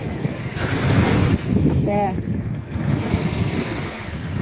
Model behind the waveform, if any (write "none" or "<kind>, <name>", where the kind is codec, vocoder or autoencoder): codec, SNAC